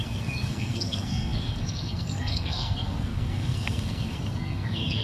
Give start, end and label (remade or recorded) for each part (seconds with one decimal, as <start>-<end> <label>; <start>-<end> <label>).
0.0-5.0 remade